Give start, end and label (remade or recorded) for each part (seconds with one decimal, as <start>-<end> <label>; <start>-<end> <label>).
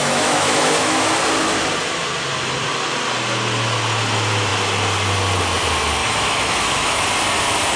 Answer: 0.0-1.1 remade; 1.1-6.0 recorded; 6.0-7.0 remade; 7.0-7.8 recorded